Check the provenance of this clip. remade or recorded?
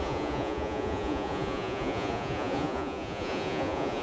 remade